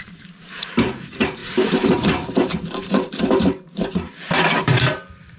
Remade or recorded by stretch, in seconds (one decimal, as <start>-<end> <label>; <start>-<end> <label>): 0.0-5.4 remade